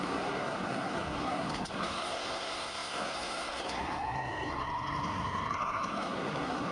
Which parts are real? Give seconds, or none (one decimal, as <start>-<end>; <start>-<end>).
none